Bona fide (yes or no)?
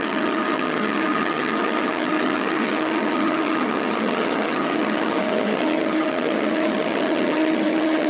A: no